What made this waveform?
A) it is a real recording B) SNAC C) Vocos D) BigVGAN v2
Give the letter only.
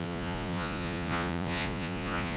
C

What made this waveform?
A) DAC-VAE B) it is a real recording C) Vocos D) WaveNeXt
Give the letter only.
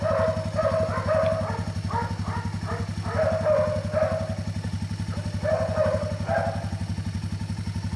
B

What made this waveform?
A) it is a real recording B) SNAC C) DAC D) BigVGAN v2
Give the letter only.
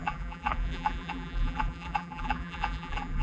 D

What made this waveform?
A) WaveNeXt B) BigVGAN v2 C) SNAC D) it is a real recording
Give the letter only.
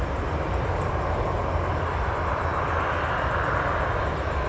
D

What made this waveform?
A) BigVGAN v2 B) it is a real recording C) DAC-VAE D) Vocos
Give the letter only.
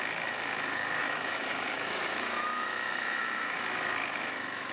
C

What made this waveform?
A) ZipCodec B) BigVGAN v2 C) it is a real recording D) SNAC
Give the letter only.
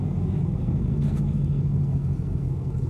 D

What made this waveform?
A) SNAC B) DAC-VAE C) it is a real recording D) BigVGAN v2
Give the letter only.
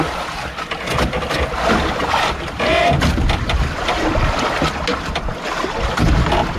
C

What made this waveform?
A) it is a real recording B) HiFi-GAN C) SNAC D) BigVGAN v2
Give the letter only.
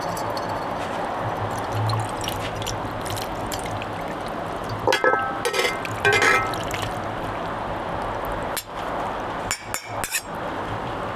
A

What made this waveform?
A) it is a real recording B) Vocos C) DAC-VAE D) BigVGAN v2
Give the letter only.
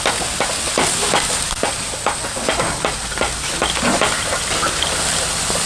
A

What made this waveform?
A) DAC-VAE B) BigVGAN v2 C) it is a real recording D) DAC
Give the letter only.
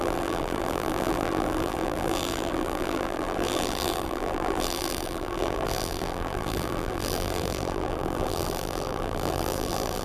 B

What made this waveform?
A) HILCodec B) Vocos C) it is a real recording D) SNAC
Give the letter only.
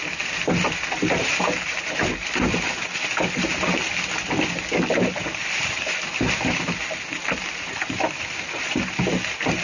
C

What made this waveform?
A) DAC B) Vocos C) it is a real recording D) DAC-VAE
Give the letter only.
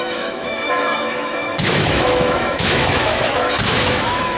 D